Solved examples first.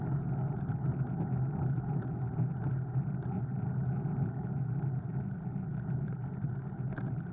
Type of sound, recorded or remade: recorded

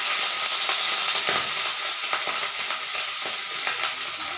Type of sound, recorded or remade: recorded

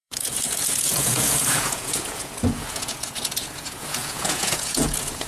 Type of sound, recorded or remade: remade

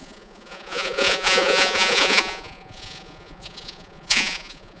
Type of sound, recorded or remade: remade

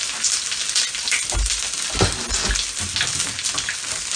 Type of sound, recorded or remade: recorded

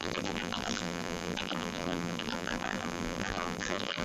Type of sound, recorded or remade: remade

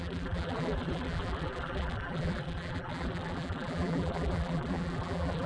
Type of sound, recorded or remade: remade